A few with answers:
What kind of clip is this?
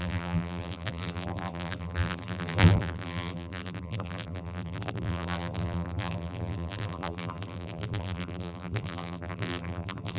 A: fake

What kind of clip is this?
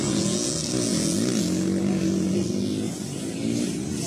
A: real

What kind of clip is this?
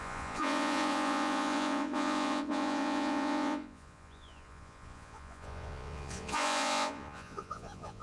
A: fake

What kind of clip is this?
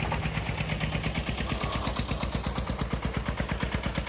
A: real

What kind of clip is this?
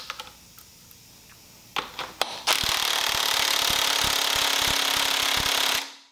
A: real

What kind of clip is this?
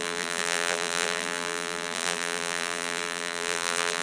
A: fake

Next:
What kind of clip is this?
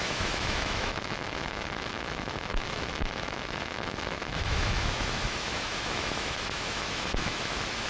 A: fake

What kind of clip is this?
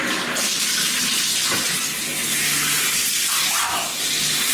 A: real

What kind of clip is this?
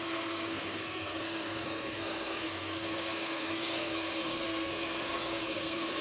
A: fake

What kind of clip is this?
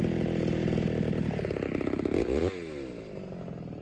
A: real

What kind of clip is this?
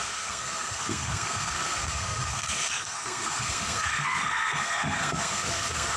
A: fake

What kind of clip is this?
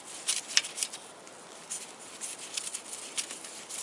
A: real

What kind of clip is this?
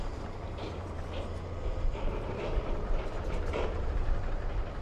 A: fake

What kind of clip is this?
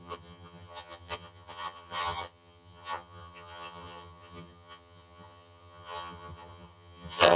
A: fake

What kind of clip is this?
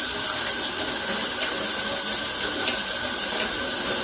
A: real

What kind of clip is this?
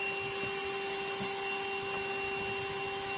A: real